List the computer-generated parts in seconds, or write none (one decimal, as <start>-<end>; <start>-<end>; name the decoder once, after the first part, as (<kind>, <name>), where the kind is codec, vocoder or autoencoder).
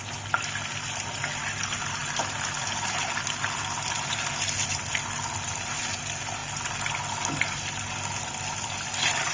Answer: none